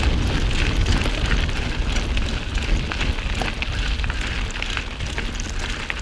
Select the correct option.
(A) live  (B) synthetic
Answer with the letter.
A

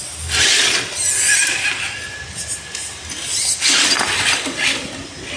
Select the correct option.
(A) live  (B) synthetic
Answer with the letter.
A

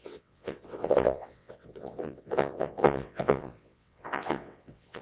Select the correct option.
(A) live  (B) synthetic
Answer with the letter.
B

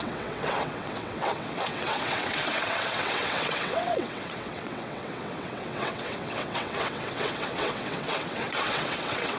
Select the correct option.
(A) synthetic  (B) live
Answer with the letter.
A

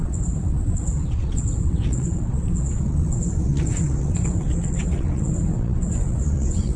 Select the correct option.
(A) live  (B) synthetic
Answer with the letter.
B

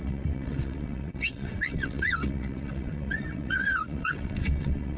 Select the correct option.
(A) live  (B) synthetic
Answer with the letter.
B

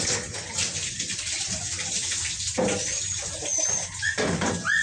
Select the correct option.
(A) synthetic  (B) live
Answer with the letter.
B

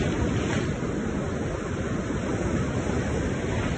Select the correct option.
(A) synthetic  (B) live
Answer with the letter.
B